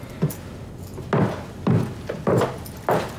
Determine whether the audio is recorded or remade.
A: recorded